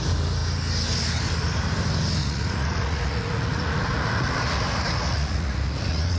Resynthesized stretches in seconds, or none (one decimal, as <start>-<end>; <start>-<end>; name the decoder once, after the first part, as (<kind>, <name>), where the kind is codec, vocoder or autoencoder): 2.2-6.2 (vocoder, Vocos)